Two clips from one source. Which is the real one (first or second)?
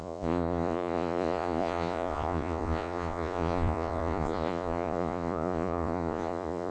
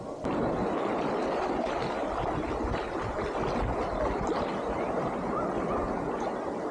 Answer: second